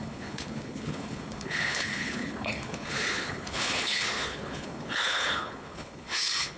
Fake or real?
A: fake